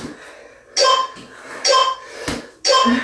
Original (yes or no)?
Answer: yes